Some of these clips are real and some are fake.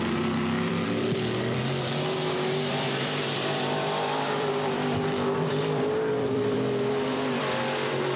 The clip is fake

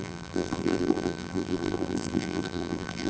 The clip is fake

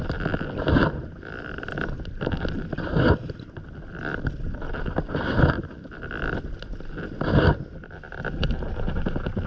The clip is real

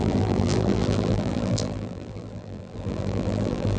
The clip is fake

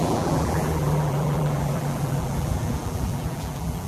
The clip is fake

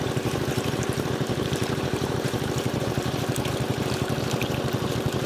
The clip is fake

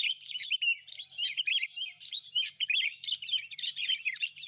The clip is fake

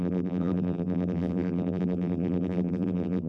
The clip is fake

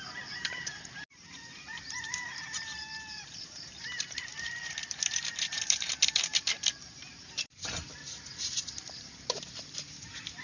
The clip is fake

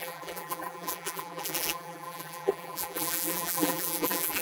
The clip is fake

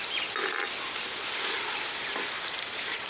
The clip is real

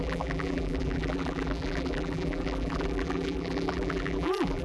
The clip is fake